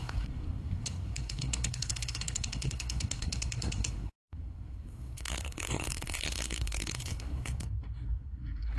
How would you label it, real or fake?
fake